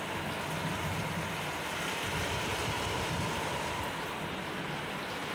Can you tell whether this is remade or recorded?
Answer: recorded